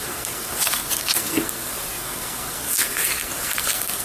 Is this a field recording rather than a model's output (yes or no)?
no